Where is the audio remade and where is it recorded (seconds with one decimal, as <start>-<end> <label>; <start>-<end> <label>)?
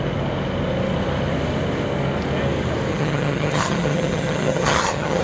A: 0.0-2.9 recorded; 2.9-5.2 remade